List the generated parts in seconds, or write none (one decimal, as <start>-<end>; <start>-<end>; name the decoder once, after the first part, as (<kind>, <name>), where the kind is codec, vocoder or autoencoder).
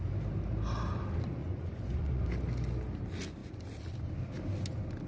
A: 1.4-2.2 (vocoder, Vocos)